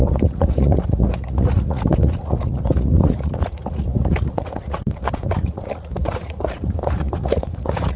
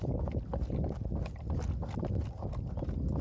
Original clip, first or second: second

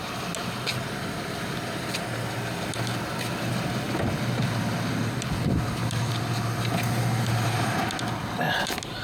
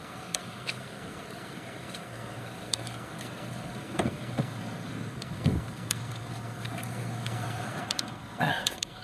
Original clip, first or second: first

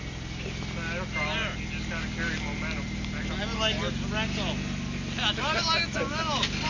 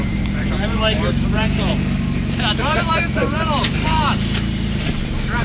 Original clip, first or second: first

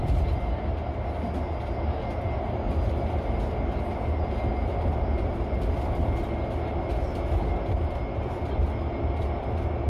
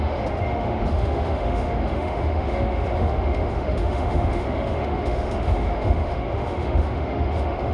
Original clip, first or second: first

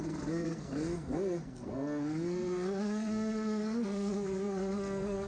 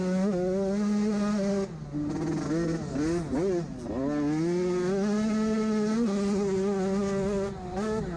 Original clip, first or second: second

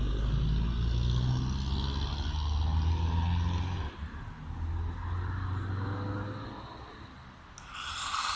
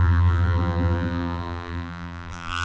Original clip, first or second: first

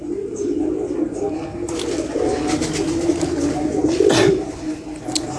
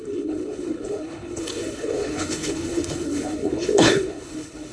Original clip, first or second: first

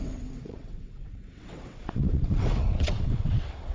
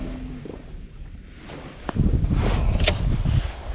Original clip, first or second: second